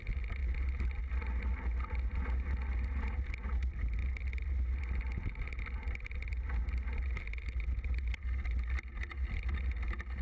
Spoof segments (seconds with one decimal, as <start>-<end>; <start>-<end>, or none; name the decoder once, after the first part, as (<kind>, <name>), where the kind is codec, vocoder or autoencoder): none